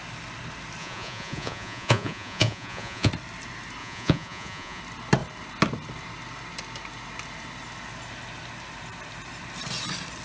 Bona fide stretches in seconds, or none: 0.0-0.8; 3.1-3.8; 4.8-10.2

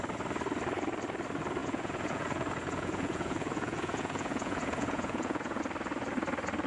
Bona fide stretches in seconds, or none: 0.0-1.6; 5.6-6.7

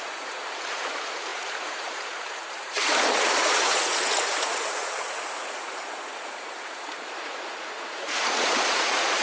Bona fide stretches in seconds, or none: none

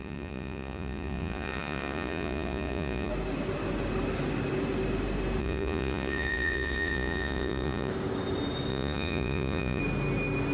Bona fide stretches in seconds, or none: 3.1-5.4; 7.9-8.7; 9.8-10.5

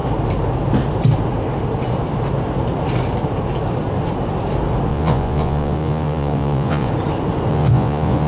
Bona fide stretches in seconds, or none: 0.0-4.9; 6.9-7.5

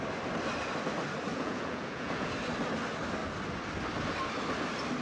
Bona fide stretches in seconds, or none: 0.0-1.3; 2.3-5.0

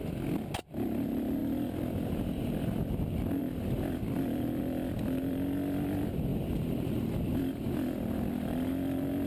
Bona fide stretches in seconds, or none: 0.0-9.3

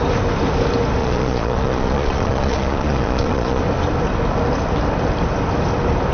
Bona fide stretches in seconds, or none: 0.0-1.0; 3.6-6.1